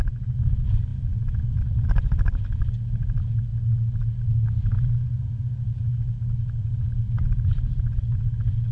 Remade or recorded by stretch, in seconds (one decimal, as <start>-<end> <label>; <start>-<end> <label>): 0.0-8.7 recorded